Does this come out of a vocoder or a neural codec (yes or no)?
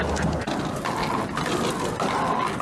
no